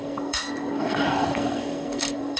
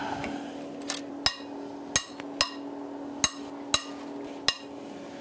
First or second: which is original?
second